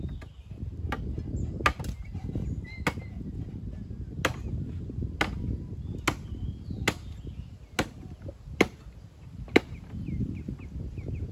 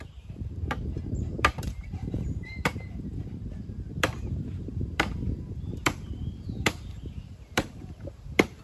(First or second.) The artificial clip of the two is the second